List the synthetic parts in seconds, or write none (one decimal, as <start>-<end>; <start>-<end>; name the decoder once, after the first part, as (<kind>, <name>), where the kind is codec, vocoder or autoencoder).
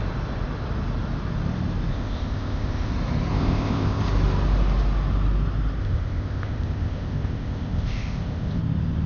1.9-2.9 (codec, ZipCodec); 3.3-4.0; 5.8-8.6